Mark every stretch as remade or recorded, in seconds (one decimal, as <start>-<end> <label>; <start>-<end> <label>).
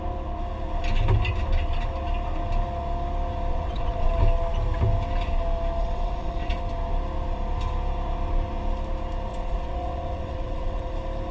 0.0-3.5 recorded; 3.5-4.1 remade; 4.1-5.8 recorded; 5.8-6.5 remade; 6.5-9.3 recorded; 9.3-10.9 remade; 10.9-11.3 recorded